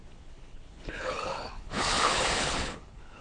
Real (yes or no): no